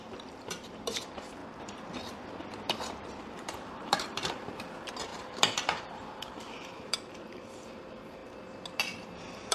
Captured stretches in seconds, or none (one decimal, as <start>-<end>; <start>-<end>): 1.4-3.2; 8.2-9.5